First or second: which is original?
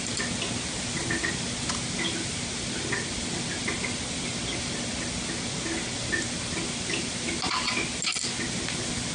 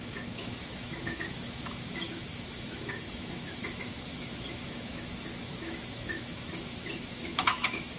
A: first